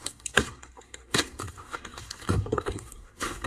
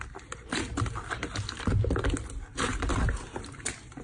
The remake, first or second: first